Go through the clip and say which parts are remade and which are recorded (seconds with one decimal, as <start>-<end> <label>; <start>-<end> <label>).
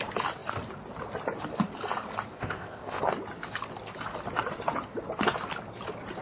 0.0-2.3 recorded; 2.3-3.0 remade; 3.0-6.2 recorded